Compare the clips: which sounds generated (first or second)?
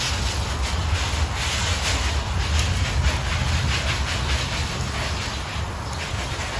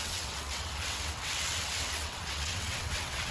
second